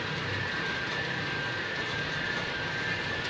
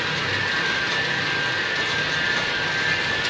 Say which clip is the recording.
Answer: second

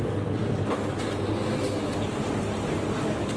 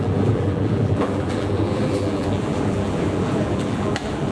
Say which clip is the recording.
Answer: first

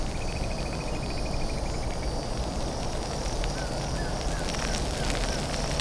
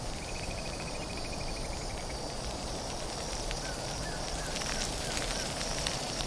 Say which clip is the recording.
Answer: first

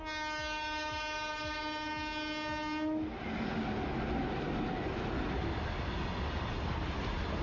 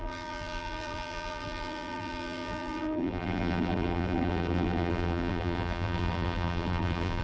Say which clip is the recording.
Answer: first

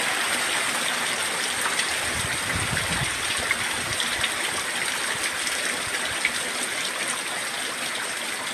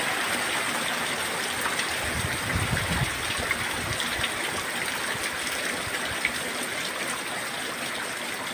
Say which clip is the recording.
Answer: second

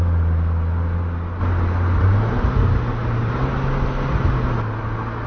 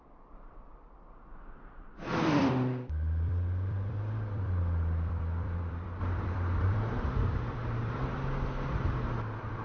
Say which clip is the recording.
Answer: first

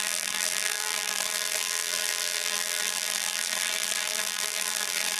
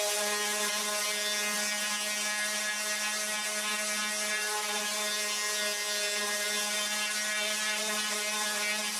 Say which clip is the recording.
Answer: second